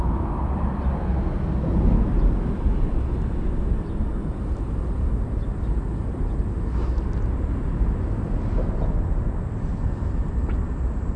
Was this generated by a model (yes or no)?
no